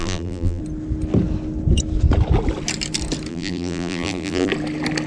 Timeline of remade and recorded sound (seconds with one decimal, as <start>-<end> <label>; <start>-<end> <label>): 0.0-0.6 remade; 0.6-3.3 recorded; 3.3-4.5 remade; 4.5-5.1 recorded